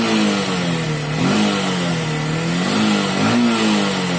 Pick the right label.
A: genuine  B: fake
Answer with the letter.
A